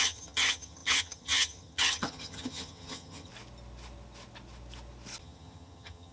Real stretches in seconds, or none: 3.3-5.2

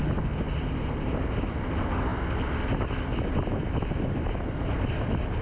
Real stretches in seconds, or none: 0.0-5.4